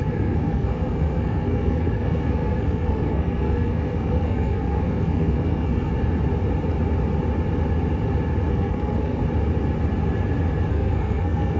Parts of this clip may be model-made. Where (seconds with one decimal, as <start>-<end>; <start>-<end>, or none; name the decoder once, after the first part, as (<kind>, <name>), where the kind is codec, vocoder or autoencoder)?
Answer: 0.0-5.9 (codec, SNAC); 8.5-9.2; 10.7-11.6